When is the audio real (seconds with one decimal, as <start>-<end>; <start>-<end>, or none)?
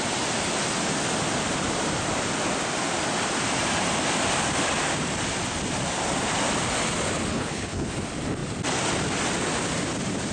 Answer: 0.0-7.3; 7.9-10.3